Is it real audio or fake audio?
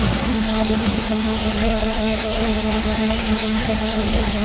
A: fake